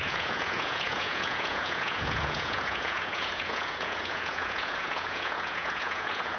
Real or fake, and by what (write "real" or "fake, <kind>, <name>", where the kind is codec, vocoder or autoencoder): fake, vocoder, Vocos